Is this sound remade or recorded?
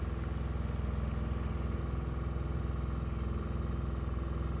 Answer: recorded